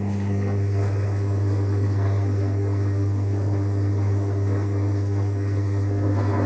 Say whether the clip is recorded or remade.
remade